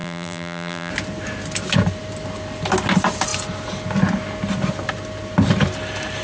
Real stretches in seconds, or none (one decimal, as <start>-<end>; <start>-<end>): 0.9-6.2